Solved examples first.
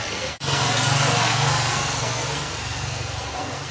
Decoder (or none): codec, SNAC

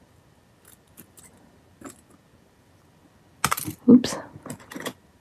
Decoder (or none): none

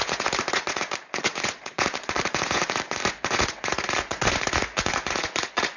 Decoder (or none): vocoder, Vocos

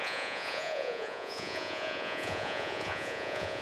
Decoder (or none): vocoder, Vocos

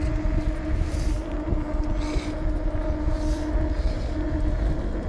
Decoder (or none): none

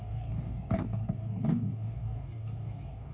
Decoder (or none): codec, DAC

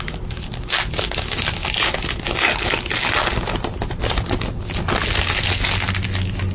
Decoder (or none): none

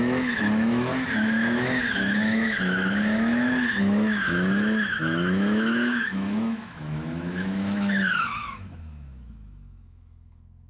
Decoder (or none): autoencoder, DAC-VAE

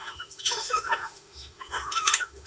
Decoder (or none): autoencoder, DAC-VAE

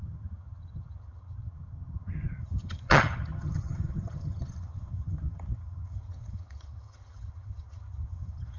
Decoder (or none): vocoder, HiFi-GAN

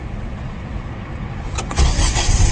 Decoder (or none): vocoder, WaveNeXt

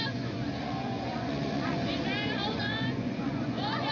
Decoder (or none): vocoder, Vocos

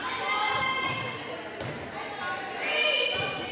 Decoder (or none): none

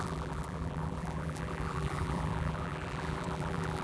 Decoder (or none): vocoder, BigVGAN v2